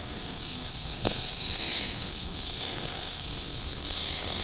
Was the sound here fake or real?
fake